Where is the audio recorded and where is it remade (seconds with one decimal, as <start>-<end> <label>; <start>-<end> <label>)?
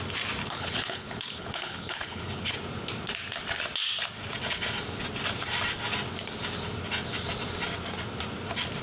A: 0.0-0.4 recorded; 0.4-2.5 remade; 2.5-8.8 recorded